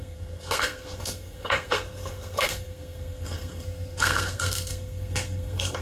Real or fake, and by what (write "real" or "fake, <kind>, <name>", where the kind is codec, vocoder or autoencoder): fake, codec, SNAC